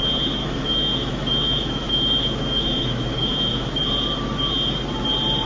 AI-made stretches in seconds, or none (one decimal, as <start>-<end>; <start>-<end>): 0.4-3.7